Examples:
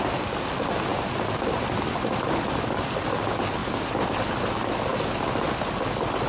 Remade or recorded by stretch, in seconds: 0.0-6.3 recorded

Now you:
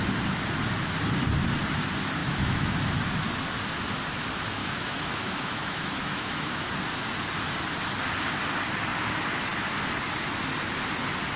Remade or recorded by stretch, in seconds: 0.0-2.2 recorded; 2.2-2.8 remade; 2.8-4.6 recorded; 4.6-6.6 remade; 6.6-11.4 recorded

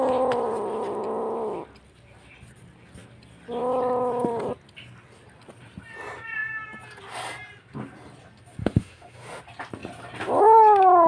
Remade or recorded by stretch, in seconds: 0.0-8.6 recorded; 8.6-9.4 remade; 9.4-11.1 recorded

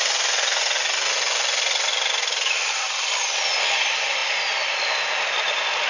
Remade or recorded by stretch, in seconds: 0.0-5.9 recorded

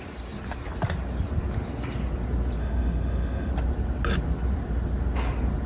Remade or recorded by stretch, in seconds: 0.0-2.6 recorded; 2.6-3.5 remade; 3.5-5.7 recorded

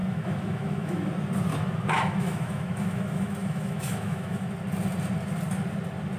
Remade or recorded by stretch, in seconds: 0.0-1.1 remade; 1.1-1.5 recorded; 1.5-4.5 remade; 4.5-6.2 recorded

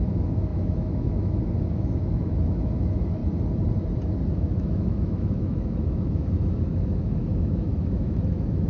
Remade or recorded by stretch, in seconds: 0.0-3.2 remade; 3.2-4.3 recorded; 4.3-8.7 remade